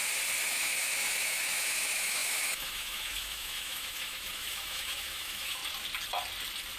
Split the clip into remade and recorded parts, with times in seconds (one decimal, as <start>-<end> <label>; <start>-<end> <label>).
0.0-0.5 recorded; 0.5-5.6 remade; 5.6-6.8 recorded